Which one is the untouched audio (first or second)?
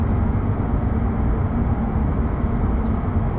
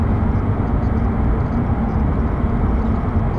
first